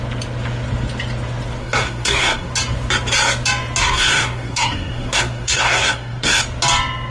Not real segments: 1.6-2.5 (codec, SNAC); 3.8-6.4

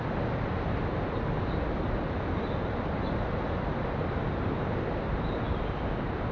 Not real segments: none

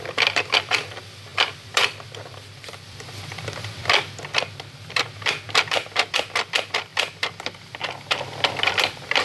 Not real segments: 0.0-9.2 (vocoder, BigVGAN v2)

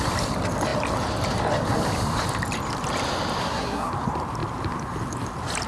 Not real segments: 3.4-3.9 (codec, SNAC)

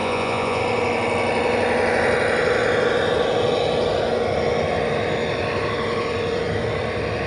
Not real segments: 0.0-0.6 (vocoder, Vocos)

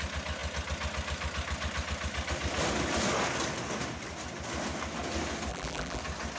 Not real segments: 5.5-6.0 (vocoder, BigVGAN v2)

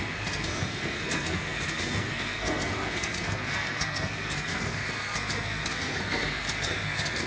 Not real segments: 0.0-7.3 (codec, SNAC)